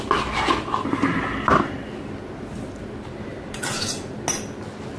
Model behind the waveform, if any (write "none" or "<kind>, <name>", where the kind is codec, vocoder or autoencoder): none